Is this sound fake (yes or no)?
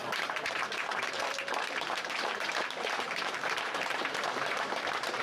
yes